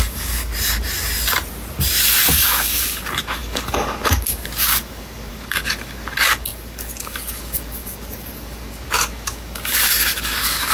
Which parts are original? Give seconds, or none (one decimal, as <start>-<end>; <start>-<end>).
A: 0.5-2.3